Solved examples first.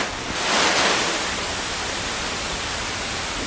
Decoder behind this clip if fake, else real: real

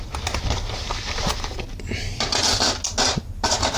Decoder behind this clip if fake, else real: real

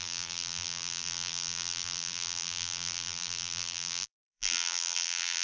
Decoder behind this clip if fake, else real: fake, vocoder, BigVGAN v2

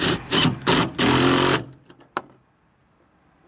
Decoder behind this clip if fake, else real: real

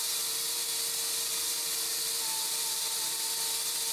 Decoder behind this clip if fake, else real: fake, vocoder, BigVGAN v2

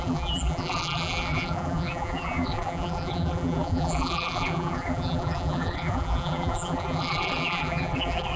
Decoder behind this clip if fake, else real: fake, vocoder, BigVGAN v2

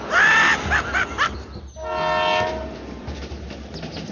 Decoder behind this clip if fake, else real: real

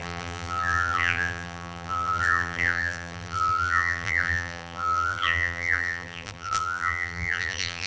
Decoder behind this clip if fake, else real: fake, vocoder, BigVGAN v2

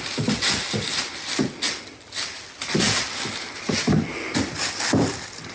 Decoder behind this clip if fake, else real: real